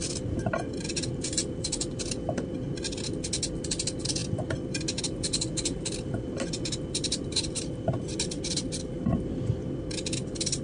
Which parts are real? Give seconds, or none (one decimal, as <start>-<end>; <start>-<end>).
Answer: 0.0-10.6